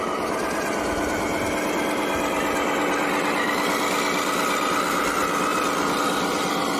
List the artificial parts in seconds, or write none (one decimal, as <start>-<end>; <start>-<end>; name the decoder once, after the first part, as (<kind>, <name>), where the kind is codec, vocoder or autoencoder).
5.5-6.0 (vocoder, BigVGAN v2)